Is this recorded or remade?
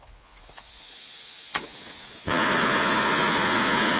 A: remade